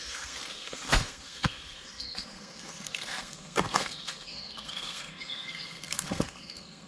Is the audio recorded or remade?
remade